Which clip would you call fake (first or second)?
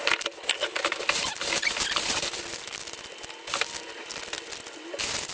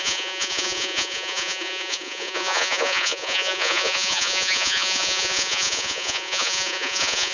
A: second